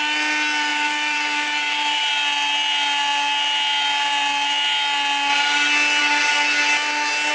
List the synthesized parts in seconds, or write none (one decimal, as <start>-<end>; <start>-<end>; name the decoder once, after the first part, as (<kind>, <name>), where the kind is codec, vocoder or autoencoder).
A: 0.7-2.1 (vocoder, BigVGAN v2)